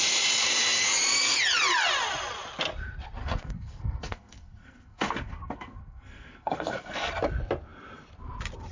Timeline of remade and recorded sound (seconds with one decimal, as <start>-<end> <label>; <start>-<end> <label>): 0.0-3.2 recorded; 3.2-7.1 remade; 7.1-8.7 recorded